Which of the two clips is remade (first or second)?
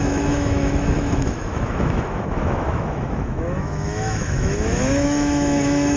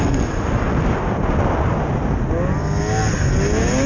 first